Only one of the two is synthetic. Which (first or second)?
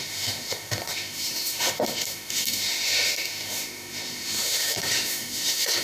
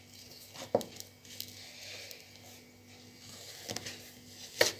first